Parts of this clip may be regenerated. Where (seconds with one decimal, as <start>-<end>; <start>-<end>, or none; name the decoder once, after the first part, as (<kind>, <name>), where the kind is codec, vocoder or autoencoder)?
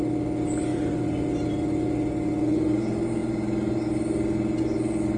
0.7-1.5 (vocoder, BigVGAN v2)